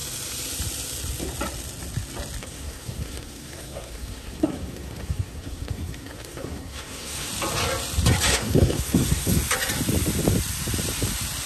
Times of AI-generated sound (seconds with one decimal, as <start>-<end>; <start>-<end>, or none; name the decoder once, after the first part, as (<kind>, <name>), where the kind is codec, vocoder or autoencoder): 2.4-7.3 (codec, SNAC); 8.3-9.4